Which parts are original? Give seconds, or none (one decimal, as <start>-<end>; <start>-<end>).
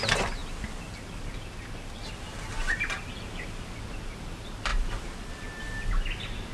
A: 0.0-6.5